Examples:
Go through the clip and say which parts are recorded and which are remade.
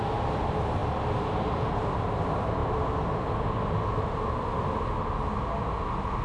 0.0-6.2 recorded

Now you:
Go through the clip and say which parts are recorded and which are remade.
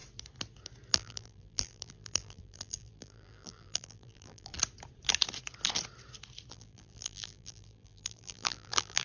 0.0-0.9 recorded; 0.9-4.5 remade; 4.5-6.5 recorded; 6.5-9.0 remade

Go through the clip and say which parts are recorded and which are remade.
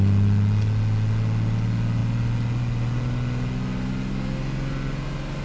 0.0-5.4 recorded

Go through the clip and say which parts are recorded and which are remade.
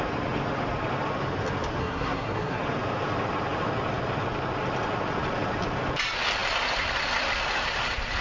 0.0-1.8 recorded; 1.8-2.6 remade; 2.6-8.2 recorded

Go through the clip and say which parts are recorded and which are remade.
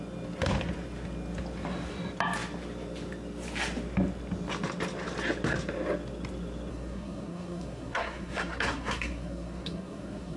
0.0-6.7 recorded; 6.7-10.4 remade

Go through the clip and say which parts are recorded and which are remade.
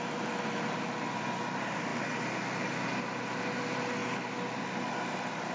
0.0-5.5 recorded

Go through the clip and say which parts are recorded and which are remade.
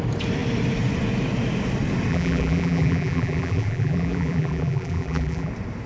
0.0-2.1 recorded; 2.1-5.5 remade; 5.5-5.9 recorded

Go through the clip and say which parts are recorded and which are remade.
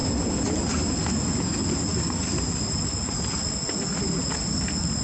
0.0-5.0 recorded